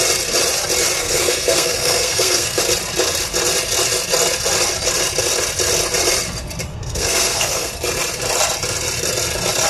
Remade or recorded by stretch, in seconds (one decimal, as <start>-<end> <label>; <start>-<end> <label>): 0.0-1.0 recorded; 1.0-2.6 remade; 2.6-6.7 recorded; 6.7-7.7 remade; 7.7-9.7 recorded